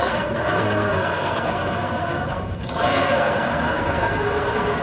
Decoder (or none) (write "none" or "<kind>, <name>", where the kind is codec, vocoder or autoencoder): codec, SNAC